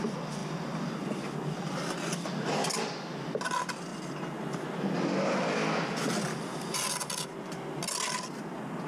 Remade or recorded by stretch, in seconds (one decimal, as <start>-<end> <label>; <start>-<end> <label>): 0.0-8.9 recorded